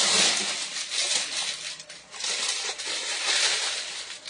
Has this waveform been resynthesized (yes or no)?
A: no